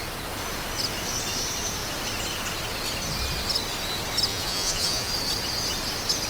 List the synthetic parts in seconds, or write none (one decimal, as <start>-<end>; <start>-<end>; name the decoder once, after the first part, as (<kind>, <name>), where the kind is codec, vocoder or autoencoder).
4.3-5.1 (vocoder, Vocos)